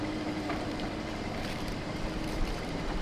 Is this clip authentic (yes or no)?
no